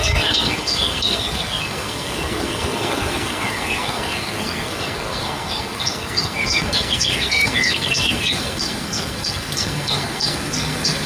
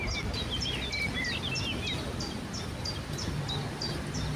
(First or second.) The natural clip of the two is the second